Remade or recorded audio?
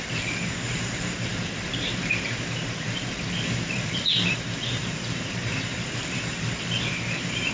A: remade